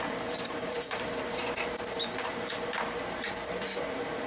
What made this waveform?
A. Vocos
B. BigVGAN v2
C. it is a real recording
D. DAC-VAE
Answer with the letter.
B